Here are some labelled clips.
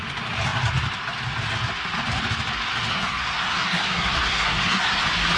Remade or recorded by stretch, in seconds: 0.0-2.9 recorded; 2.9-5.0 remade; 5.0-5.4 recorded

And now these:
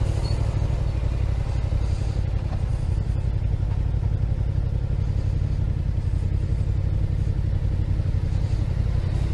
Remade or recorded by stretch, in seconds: 0.0-9.3 recorded

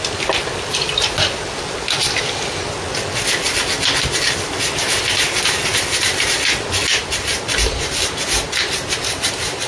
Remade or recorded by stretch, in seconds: 0.0-6.9 recorded; 6.9-9.7 remade